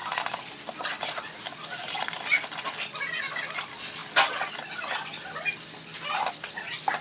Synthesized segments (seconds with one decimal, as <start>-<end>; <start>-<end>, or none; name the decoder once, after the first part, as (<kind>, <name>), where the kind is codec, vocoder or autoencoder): none